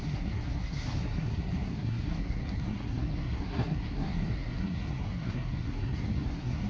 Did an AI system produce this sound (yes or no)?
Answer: yes